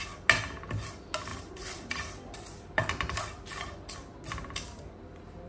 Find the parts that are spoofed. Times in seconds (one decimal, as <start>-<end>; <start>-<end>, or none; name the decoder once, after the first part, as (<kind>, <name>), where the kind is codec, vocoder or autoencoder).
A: 1.3-3.2 (vocoder, BigVGAN v2)